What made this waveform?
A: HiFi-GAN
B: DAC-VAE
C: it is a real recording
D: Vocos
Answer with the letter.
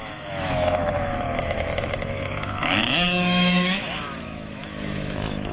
B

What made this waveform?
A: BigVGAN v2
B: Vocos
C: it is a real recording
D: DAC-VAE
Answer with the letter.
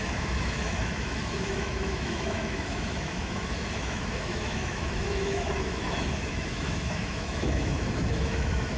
D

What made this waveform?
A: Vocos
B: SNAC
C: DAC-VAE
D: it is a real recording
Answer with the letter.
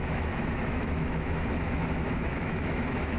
C